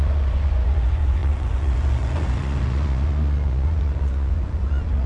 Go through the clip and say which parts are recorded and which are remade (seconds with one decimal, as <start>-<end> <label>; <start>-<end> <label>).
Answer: 0.0-5.1 remade